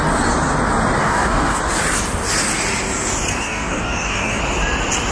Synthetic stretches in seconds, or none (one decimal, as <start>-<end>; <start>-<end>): 1.0-1.6; 3.3-4.4